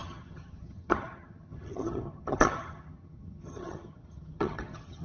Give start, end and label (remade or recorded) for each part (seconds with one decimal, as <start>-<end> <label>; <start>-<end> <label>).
0.0-5.0 remade